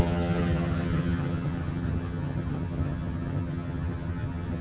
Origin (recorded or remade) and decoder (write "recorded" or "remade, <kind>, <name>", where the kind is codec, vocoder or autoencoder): remade, vocoder, HiFi-GAN